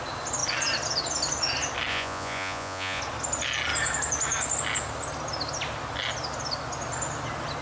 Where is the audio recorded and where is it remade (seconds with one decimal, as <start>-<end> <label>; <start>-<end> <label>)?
0.0-1.9 recorded; 1.9-3.0 remade; 3.0-7.6 recorded